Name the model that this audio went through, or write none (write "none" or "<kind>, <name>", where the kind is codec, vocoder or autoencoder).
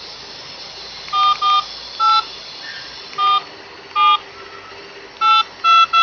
none